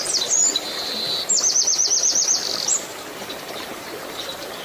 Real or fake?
fake